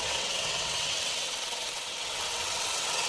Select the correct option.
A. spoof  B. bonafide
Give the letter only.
A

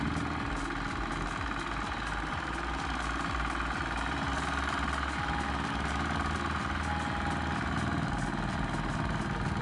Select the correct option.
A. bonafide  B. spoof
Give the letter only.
A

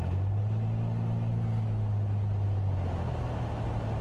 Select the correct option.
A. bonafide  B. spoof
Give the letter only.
A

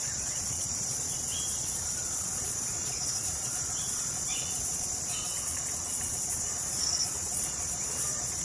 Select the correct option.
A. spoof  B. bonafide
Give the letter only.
A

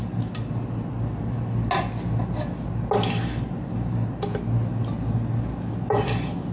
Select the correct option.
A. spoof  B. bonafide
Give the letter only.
B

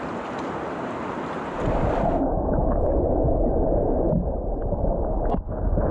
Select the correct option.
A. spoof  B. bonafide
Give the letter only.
B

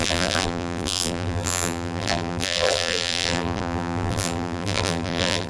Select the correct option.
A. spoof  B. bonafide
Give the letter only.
A